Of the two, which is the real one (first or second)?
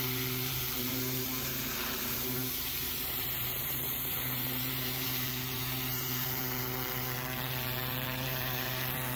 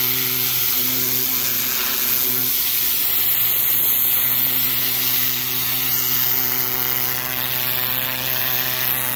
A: second